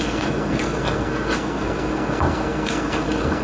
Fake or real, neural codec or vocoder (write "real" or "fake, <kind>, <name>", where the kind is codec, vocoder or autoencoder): fake, codec, SNAC